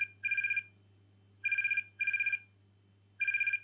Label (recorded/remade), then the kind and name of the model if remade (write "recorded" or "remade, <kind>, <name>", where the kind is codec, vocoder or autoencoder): recorded